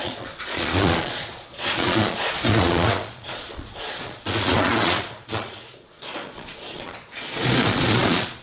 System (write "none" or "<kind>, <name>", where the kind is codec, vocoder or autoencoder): vocoder, Vocos